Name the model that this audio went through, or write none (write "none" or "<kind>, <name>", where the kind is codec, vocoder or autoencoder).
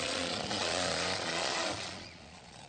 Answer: vocoder, Vocos